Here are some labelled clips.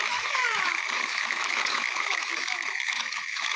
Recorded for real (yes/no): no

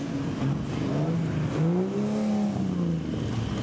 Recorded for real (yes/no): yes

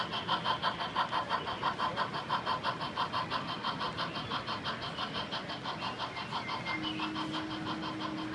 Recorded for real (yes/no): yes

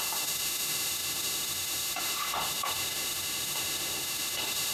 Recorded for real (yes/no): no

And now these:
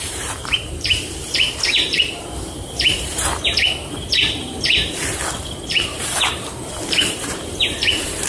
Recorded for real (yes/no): no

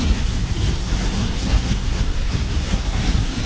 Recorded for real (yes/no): no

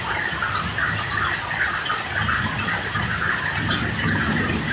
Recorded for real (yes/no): yes